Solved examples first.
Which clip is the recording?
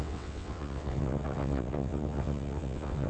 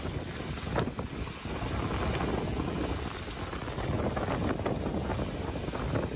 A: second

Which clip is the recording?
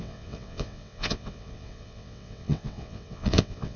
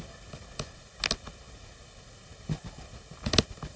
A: second